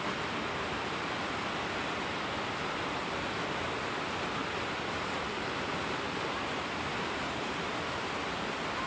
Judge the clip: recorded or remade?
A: recorded